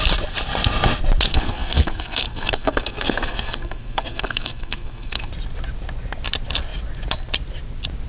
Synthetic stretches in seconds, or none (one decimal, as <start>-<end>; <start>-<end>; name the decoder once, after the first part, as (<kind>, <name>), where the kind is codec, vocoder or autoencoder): 1.3-5.3 (codec, SNAC)